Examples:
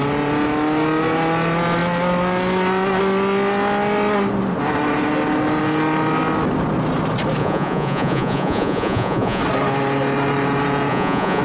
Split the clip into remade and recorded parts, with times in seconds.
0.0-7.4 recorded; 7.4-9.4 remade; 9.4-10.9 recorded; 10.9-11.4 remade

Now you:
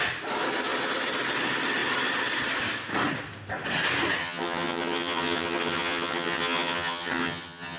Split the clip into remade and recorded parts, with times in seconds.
0.0-4.2 recorded; 4.2-7.8 remade

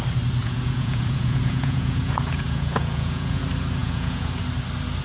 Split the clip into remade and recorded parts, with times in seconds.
0.0-0.4 recorded; 0.4-3.4 remade; 3.4-3.8 recorded; 3.8-4.4 remade; 4.4-5.0 recorded

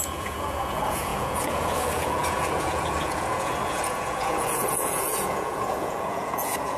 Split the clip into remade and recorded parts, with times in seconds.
0.0-6.8 remade

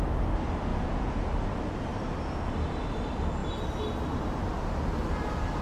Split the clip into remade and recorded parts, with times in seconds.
0.0-0.7 recorded; 0.7-1.3 remade; 1.3-5.6 recorded

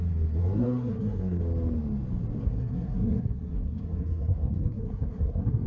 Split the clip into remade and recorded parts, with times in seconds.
0.0-0.4 recorded; 0.4-1.4 remade; 1.4-2.4 recorded; 2.4-5.7 remade